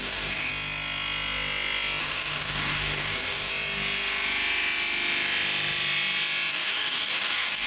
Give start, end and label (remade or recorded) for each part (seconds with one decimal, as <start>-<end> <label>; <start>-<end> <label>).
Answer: 0.0-0.5 remade; 0.5-2.0 recorded; 2.0-3.5 remade; 3.5-6.5 recorded; 6.5-7.7 remade